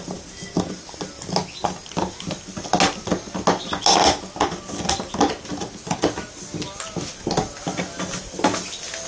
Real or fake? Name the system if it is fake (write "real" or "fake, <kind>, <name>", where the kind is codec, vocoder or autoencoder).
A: real